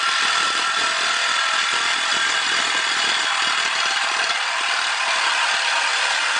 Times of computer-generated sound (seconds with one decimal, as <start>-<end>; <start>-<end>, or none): none